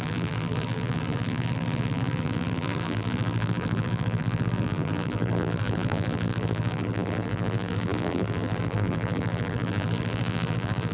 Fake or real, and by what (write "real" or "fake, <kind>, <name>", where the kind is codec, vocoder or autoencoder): fake, vocoder, BigVGAN v2